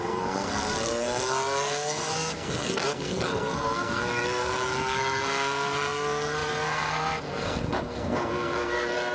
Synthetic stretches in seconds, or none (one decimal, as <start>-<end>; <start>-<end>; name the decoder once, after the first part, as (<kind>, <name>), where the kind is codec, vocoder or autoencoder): 0.0-9.1 (codec, SNAC)